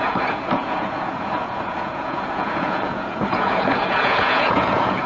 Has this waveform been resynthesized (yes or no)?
yes